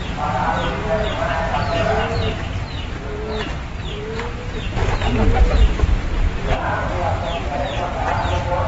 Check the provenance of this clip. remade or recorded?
recorded